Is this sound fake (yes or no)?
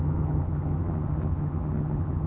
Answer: yes